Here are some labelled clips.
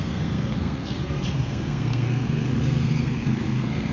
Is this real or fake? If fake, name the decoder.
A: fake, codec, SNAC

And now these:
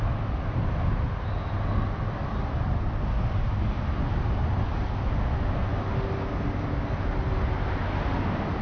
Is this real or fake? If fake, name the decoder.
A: real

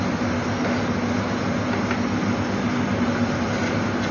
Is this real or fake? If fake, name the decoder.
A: real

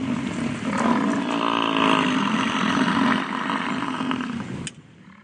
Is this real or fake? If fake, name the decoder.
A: real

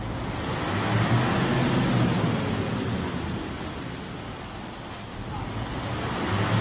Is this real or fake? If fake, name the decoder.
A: real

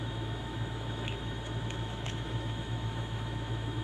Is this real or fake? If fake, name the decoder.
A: fake, autoencoder, DAC-VAE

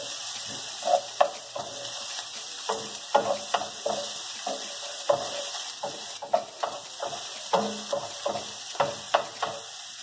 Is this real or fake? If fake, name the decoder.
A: fake, vocoder, BigVGAN v2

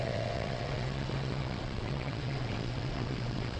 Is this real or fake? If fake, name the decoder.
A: fake, vocoder, WaveNeXt